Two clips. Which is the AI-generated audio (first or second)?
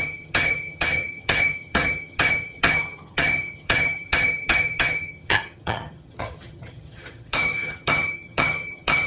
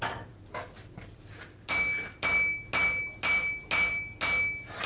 first